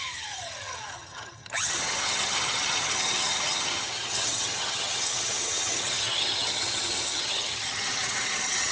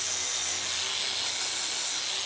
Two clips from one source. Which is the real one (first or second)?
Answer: second